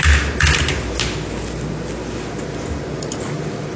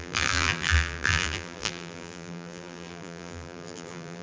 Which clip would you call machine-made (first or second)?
second